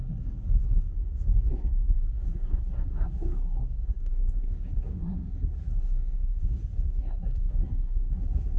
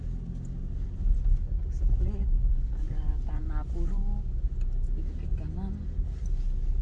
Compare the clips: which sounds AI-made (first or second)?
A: first